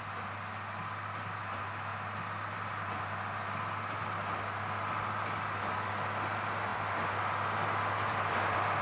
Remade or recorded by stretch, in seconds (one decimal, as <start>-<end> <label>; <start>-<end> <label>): 0.0-6.7 recorded; 6.7-8.8 remade